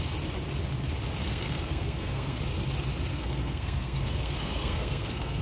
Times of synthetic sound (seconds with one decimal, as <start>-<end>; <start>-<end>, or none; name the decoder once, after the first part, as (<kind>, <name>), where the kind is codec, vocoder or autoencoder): 1.3-2.4 (codec, SNAC); 3.1-5.4